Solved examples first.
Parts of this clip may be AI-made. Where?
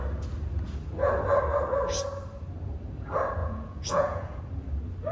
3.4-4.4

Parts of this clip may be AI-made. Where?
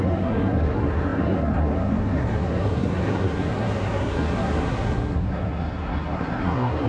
0.0-6.9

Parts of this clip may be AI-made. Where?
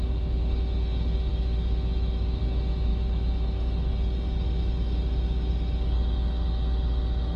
1.3-2.4; 2.9-3.9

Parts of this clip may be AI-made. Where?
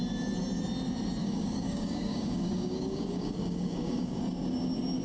1.2-4.2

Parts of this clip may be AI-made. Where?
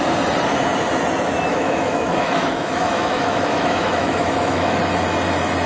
1.5-4.8